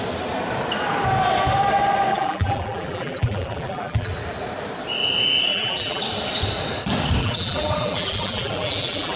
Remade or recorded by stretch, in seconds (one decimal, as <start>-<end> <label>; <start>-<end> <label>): 0.0-2.1 recorded; 2.1-4.1 remade; 4.1-5.5 recorded; 5.5-6.0 remade; 6.0-7.2 recorded; 7.2-9.2 remade